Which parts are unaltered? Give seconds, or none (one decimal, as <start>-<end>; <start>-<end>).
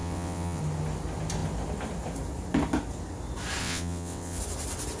0.6-3.6; 4.4-5.0